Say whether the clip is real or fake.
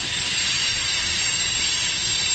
real